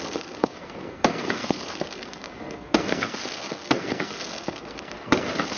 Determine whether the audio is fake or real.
fake